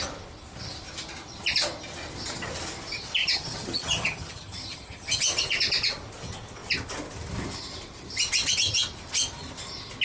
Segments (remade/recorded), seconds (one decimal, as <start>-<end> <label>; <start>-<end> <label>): 0.0-3.2 recorded; 3.2-5.2 remade; 5.2-10.0 recorded